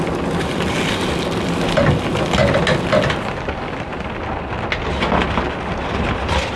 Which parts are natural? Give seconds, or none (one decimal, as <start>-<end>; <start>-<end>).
0.0-6.6